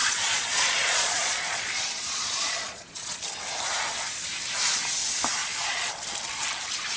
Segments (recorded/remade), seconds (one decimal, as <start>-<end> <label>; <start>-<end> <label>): 0.0-3.2 remade; 3.2-5.4 recorded; 5.4-5.9 remade; 5.9-7.0 recorded